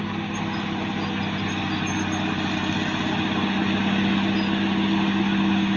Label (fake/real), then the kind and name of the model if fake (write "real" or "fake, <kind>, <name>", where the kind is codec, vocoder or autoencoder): real